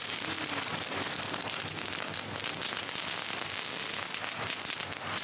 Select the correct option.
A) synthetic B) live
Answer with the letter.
B